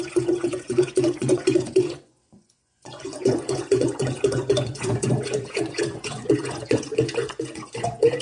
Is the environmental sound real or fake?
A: fake